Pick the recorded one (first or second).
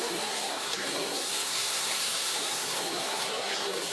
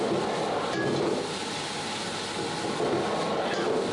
second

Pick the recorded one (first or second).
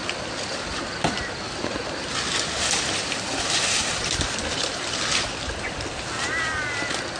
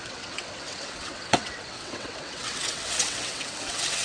first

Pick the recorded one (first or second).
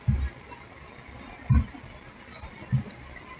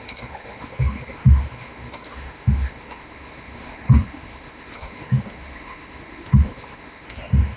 first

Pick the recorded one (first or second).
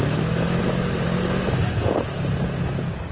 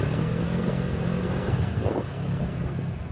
first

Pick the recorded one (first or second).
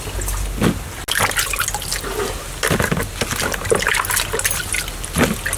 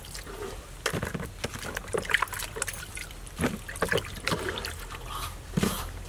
first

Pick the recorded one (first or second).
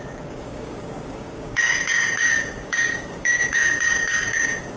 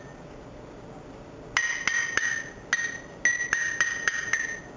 second